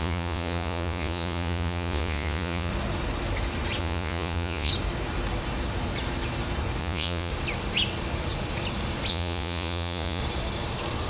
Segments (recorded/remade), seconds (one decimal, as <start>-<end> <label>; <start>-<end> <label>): 0.0-2.7 remade; 2.7-3.8 recorded; 3.8-4.7 remade; 4.7-6.8 recorded; 6.8-7.3 remade; 7.3-9.1 recorded; 9.1-10.2 remade; 10.2-11.1 recorded